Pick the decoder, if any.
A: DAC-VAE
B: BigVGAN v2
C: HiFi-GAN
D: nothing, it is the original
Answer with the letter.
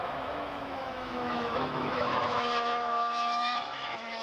A